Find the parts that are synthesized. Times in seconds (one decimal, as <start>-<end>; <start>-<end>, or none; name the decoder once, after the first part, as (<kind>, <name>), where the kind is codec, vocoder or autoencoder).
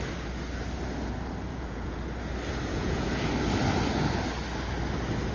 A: 1.5-2.0 (vocoder, Vocos); 2.7-3.3